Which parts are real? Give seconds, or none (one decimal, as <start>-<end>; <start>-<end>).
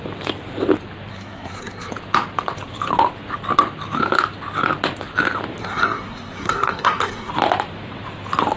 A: 0.0-1.1; 1.9-5.6; 7.3-8.6